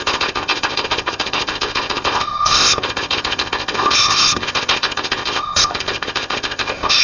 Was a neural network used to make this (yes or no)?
yes